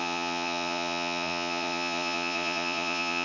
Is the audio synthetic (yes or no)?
yes